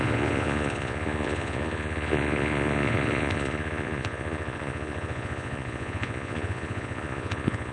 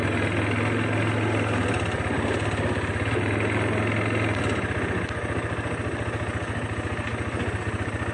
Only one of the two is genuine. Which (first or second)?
second